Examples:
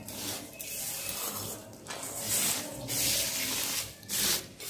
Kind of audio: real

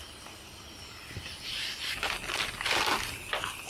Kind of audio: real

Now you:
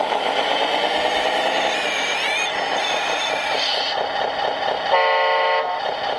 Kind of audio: real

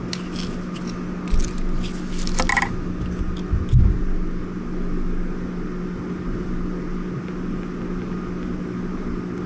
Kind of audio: real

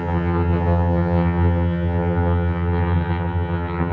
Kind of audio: fake